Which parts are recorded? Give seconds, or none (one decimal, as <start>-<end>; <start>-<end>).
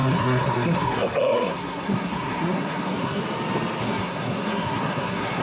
3.2-3.8